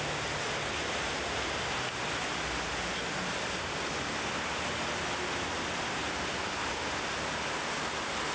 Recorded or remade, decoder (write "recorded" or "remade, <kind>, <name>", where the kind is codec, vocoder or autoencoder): recorded